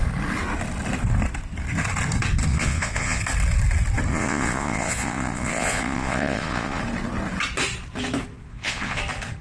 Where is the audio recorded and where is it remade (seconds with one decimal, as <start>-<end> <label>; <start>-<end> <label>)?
0.0-2.5 recorded; 2.5-3.2 remade; 3.2-4.1 recorded; 4.1-6.8 remade; 6.8-8.5 recorded; 8.5-9.0 remade; 9.0-9.4 recorded